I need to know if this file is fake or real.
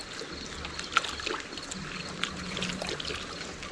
real